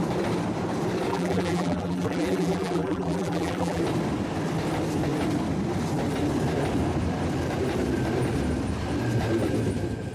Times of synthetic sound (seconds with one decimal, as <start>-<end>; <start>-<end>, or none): 1.1-3.8